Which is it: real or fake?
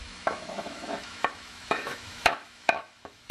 fake